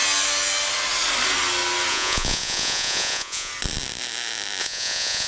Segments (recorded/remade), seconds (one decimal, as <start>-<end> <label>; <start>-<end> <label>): 0.0-1.9 recorded; 1.9-3.5 remade; 3.5-4.6 recorded; 4.6-5.3 remade